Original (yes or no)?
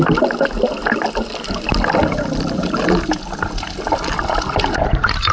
yes